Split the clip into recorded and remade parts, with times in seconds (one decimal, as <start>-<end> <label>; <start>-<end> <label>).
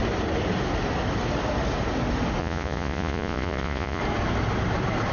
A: 0.0-2.4 recorded; 2.4-4.0 remade; 4.0-5.1 recorded